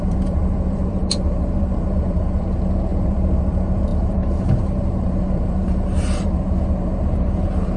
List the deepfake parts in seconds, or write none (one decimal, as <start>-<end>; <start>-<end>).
0.0-7.8